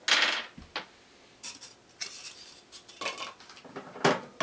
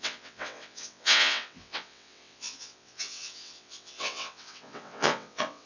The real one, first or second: first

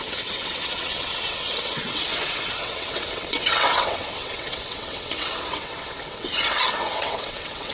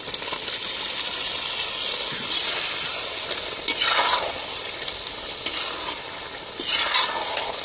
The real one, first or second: second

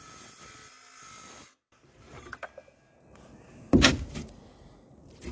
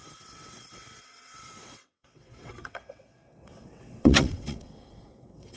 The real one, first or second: first